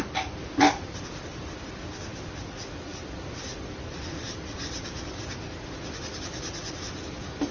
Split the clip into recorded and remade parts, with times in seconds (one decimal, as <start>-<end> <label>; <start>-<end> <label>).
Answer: 0.0-7.5 recorded